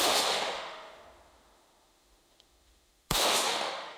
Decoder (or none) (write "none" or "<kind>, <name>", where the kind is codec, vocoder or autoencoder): autoencoder, DAC-VAE